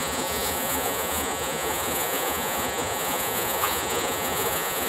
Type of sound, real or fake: fake